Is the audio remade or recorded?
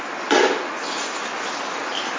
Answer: recorded